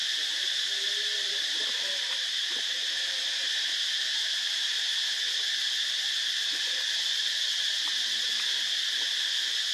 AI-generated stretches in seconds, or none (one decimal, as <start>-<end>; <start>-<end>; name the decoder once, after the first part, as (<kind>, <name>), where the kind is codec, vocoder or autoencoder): 0.0-5.1 (vocoder, BigVGAN v2)